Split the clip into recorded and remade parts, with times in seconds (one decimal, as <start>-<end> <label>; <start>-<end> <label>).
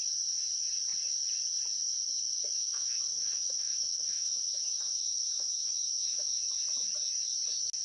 0.0-2.6 recorded; 2.6-6.4 remade; 6.4-7.8 recorded